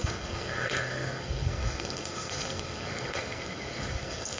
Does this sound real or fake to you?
fake